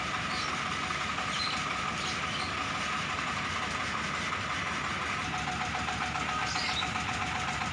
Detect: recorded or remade recorded